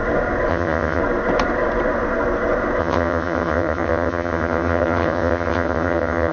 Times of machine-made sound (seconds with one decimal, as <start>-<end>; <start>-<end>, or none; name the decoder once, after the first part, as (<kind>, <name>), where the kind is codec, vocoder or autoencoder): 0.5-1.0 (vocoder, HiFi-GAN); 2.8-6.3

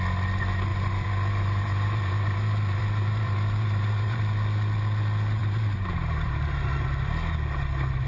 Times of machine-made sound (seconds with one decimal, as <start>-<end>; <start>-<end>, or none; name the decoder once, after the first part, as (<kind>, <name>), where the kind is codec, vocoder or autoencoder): 0.7-4.2 (vocoder, BigVGAN v2); 5.4-6.7

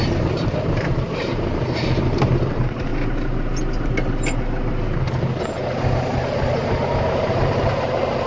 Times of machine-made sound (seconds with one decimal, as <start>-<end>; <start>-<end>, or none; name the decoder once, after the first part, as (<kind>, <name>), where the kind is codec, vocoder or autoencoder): 0.0-2.9 (vocoder, BigVGAN v2); 5.4-8.3

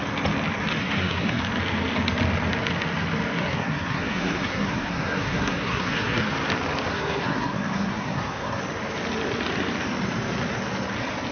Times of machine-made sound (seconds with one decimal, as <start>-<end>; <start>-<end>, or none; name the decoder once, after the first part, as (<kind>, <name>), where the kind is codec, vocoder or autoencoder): 0.8-1.4 (codec, SNAC); 3.5-6.2; 6.9-8.6

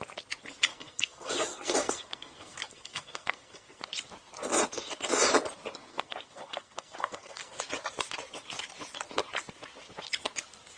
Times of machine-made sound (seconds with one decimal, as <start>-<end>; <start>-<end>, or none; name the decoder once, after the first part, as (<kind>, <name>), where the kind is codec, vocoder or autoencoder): 0.7-3.9 (codec, SNAC); 5.9-7.6